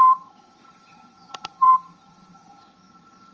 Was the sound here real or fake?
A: fake